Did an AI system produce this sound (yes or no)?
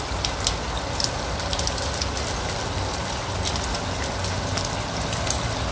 no